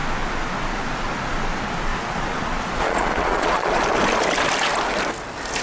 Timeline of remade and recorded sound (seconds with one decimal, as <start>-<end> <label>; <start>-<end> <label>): 0.0-1.9 recorded; 1.9-3.8 remade; 3.8-5.6 recorded

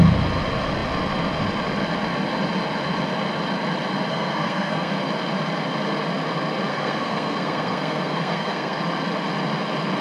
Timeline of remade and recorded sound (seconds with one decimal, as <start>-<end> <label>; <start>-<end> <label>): 0.0-4.1 recorded; 4.1-4.9 remade; 4.9-6.7 recorded; 6.7-8.8 remade; 8.8-10.0 recorded

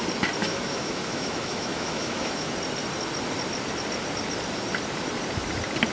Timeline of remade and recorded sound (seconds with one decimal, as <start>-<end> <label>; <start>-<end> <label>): 0.0-0.4 recorded; 0.4-2.5 remade; 2.5-5.9 recorded

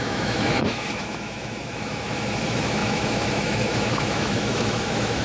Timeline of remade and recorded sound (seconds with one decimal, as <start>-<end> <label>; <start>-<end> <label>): 0.0-5.2 remade

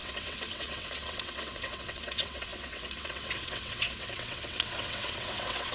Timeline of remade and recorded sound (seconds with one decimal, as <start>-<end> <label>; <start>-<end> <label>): 0.0-5.7 remade

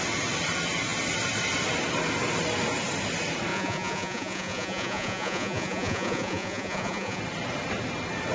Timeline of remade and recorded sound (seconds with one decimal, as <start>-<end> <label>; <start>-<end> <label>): 0.0-3.5 recorded; 3.5-7.2 remade; 7.2-8.3 recorded

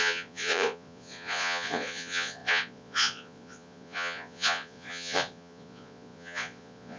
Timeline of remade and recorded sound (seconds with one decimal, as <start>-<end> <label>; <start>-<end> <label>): 0.0-7.0 remade

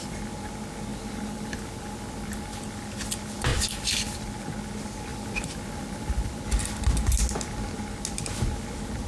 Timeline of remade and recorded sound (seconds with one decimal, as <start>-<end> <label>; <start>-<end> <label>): 0.0-0.9 recorded; 0.9-2.6 remade; 2.6-3.5 recorded; 3.5-4.1 remade; 4.1-5.1 recorded; 5.1-6.4 remade; 6.4-9.1 recorded